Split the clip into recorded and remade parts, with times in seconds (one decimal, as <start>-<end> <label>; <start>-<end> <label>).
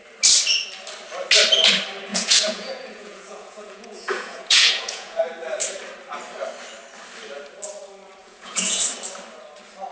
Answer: 0.0-2.1 recorded; 2.1-5.2 remade; 5.2-8.2 recorded; 8.2-8.8 remade; 8.8-9.9 recorded